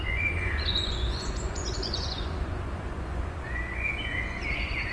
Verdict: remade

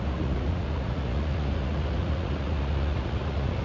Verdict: remade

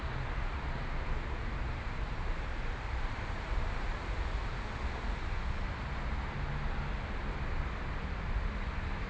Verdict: recorded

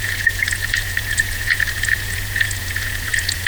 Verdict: remade